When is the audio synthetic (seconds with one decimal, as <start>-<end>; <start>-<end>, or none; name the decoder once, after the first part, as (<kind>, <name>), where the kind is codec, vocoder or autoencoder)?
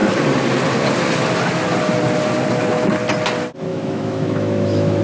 3.7-5.0 (autoencoder, DAC-VAE)